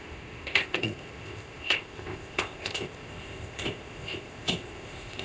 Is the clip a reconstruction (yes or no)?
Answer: yes